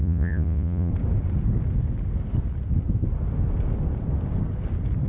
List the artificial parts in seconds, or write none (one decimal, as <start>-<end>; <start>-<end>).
0.0-0.9